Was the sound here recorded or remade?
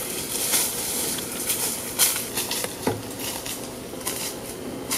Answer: recorded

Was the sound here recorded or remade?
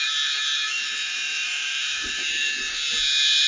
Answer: remade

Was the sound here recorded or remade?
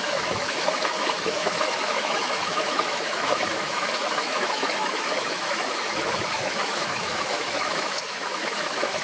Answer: remade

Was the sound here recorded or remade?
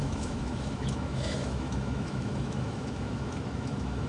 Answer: remade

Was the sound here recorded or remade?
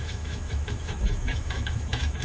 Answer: remade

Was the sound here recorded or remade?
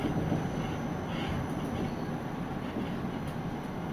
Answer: recorded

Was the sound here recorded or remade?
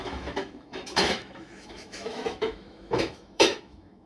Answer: remade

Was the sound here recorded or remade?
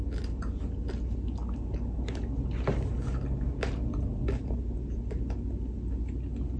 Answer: recorded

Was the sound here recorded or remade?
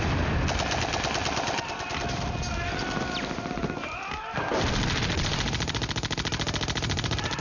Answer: recorded